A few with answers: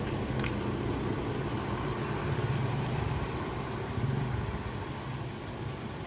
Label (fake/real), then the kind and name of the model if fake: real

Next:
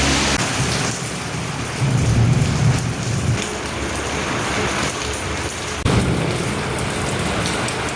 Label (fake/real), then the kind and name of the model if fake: real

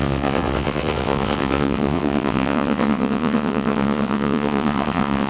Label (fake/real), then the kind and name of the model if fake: fake, vocoder, WaveNeXt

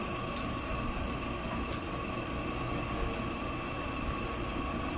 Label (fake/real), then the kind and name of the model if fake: real